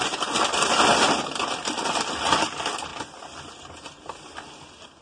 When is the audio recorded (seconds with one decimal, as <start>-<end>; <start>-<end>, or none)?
2.9-4.0